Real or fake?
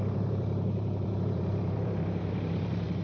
fake